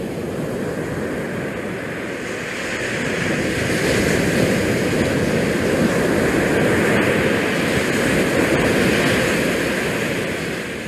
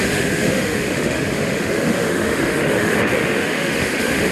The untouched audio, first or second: first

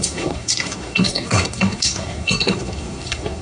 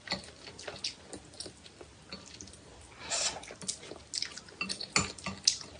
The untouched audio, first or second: second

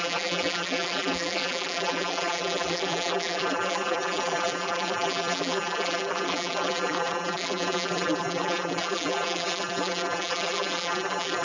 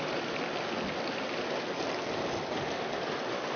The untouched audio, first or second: second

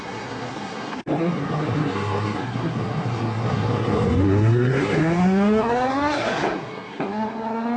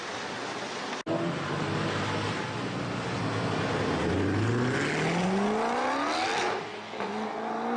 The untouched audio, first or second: second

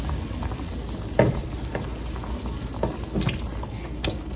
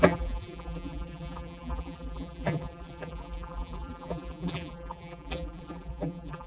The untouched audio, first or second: first